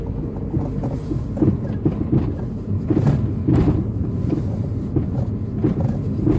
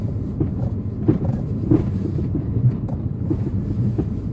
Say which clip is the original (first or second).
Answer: first